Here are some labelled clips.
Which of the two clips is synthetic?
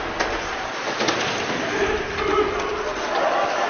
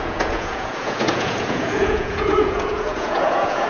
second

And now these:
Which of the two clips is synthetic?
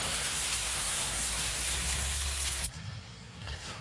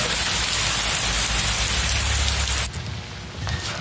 first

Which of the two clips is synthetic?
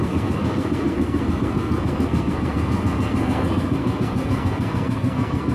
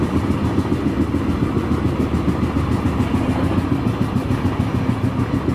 first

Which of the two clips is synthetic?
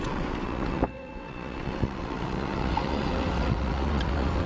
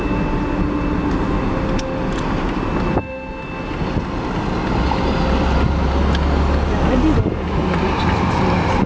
first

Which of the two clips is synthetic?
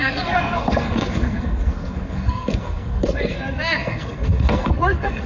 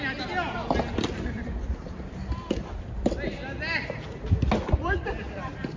first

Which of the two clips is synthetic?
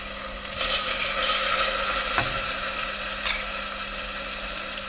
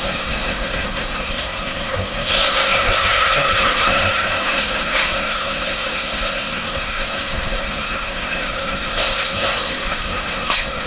second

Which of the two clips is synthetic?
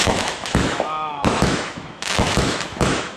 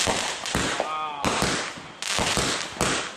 first